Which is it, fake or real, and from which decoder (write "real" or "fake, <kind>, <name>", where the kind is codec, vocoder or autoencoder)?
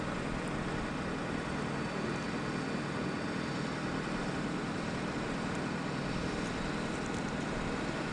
real